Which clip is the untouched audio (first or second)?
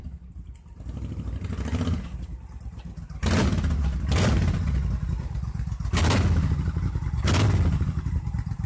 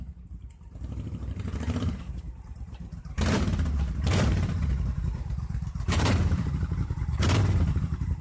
first